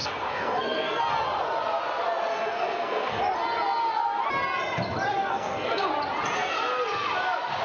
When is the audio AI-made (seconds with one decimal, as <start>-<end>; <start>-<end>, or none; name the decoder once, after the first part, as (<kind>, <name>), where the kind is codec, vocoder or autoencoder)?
0.0-1.0 (codec, SNAC); 2.3-3.2; 5.2-5.9